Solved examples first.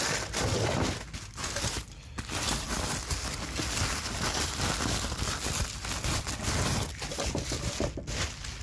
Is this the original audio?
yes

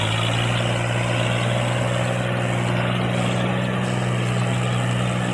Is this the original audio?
yes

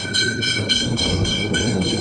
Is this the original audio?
no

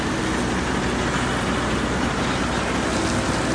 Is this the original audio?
yes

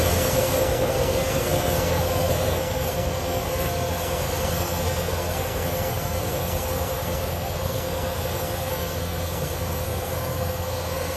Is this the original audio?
no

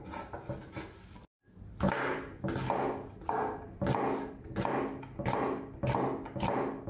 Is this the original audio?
yes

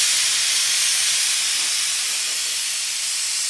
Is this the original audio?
yes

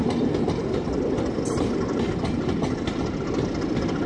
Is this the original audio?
yes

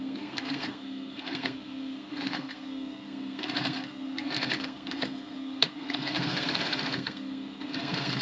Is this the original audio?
no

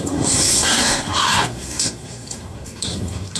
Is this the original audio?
no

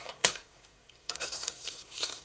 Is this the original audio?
no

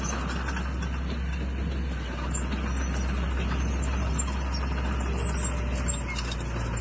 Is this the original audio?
yes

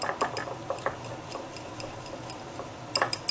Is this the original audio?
yes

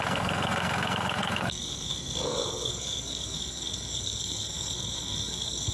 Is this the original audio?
no